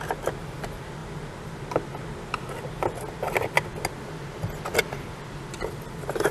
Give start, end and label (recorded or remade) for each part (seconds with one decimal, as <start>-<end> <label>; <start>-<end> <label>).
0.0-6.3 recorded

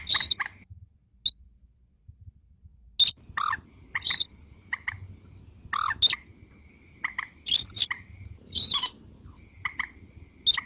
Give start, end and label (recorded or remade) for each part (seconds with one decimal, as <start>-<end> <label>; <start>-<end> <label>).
0.0-7.8 recorded; 7.8-8.9 remade; 8.9-10.7 recorded

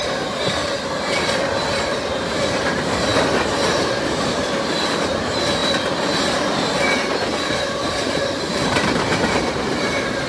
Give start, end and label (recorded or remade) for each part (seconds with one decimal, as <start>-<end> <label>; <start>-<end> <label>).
0.0-0.6 remade; 0.6-2.1 recorded; 2.1-5.6 remade; 5.6-8.0 recorded; 8.0-10.3 remade

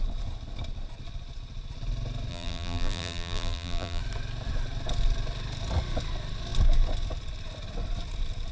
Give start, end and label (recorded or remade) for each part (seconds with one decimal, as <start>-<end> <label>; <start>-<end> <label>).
0.0-2.3 recorded; 2.3-4.0 remade; 4.0-8.5 recorded